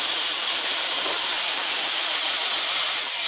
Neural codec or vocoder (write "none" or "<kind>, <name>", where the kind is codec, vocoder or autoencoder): none